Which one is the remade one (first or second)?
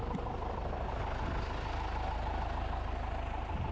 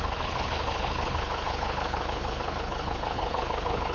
second